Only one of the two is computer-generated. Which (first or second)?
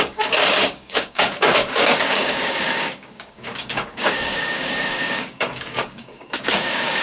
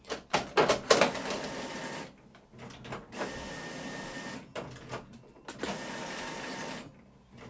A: first